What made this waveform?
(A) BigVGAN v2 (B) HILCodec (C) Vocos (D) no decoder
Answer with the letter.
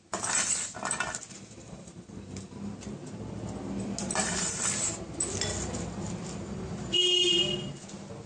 D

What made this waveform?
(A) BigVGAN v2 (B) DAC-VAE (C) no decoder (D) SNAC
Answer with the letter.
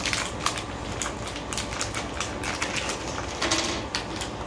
C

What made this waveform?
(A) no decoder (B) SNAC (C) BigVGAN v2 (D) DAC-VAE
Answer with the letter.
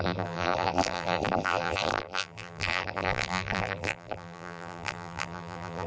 C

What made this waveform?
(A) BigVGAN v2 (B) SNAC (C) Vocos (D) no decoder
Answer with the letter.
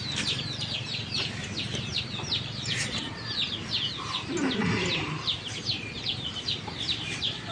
A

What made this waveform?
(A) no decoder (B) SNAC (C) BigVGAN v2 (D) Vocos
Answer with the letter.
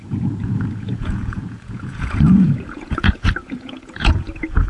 D